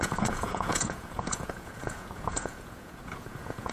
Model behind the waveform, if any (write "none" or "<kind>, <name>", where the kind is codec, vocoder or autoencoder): vocoder, Vocos